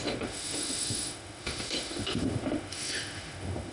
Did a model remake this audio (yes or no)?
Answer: yes